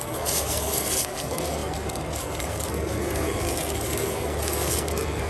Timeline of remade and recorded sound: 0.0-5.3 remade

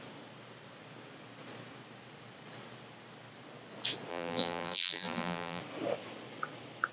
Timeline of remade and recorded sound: 0.0-4.1 recorded; 4.1-5.6 remade; 5.6-6.9 recorded

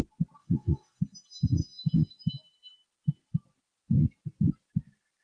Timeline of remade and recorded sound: 0.0-0.4 recorded; 0.4-1.0 remade; 1.0-5.2 recorded

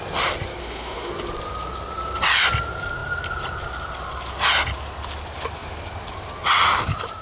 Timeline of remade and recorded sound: 0.0-0.6 recorded; 0.6-1.1 remade; 1.1-7.2 recorded

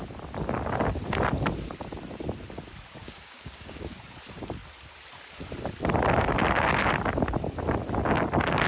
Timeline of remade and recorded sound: 0.0-3.0 recorded; 3.0-3.9 remade; 3.9-8.7 recorded

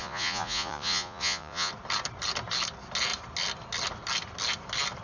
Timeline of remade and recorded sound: 0.0-1.7 remade; 1.7-5.0 recorded